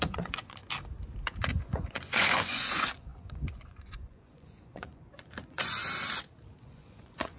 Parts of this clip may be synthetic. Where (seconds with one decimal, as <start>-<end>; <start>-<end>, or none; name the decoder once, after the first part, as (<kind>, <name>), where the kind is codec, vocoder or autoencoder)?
0.0-0.6 (vocoder, Vocos); 1.5-5.8; 6.6-7.4

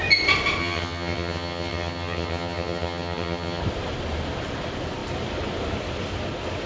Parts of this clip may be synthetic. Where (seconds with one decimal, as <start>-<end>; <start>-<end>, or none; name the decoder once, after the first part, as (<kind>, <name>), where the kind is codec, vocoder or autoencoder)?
0.6-3.6 (vocoder, HiFi-GAN)

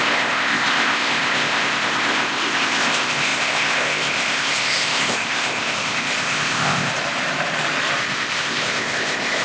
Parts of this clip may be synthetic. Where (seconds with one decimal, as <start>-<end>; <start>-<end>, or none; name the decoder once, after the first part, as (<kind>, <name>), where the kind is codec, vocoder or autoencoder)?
0.0-6.9 (codec, ZipCodec); 8.0-9.4

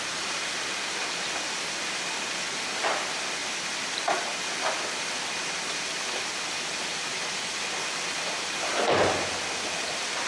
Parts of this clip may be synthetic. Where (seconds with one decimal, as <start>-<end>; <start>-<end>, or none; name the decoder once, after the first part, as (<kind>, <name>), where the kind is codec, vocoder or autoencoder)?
none